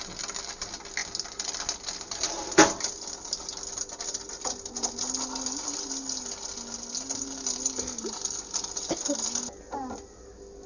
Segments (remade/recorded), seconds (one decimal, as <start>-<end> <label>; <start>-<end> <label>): 0.0-10.7 recorded